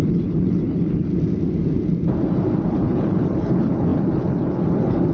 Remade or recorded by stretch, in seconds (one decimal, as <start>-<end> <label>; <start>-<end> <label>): 0.0-1.1 remade; 1.1-2.7 recorded; 2.7-5.1 remade